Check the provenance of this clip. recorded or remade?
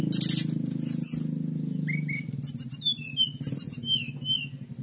recorded